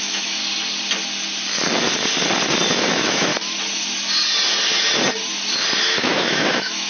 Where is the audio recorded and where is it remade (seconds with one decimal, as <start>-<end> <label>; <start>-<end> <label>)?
0.0-0.4 remade; 0.4-2.8 recorded; 2.8-3.3 remade; 3.3-5.8 recorded; 5.8-6.9 remade